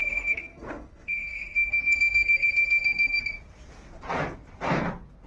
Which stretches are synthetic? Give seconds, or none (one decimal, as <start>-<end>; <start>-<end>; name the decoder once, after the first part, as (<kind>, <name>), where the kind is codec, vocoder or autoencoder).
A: 0.0-3.2 (codec, SNAC)